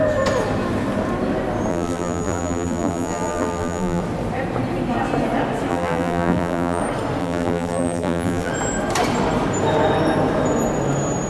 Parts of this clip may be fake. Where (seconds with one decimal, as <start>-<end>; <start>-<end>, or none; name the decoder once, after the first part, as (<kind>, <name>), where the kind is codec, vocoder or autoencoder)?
1.7-4.0 (vocoder, BigVGAN v2); 5.7-6.8; 7.2-8.5